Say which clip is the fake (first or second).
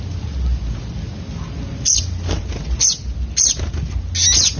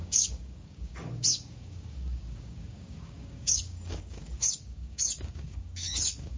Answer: second